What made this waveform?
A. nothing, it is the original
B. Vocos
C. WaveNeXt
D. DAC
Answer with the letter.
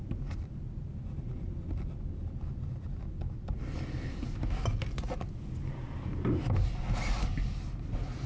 A